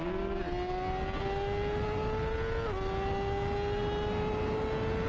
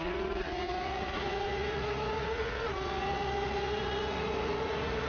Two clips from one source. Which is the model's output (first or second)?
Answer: second